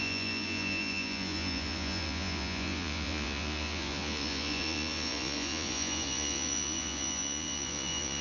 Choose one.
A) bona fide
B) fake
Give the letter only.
B